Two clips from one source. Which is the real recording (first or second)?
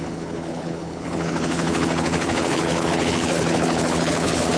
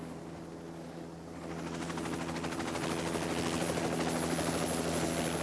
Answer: second